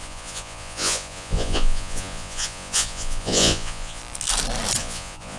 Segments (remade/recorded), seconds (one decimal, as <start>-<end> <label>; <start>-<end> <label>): 0.0-4.0 remade; 4.0-4.8 recorded; 4.8-5.4 remade